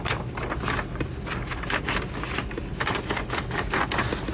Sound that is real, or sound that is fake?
real